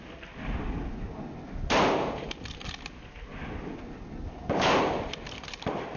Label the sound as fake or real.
real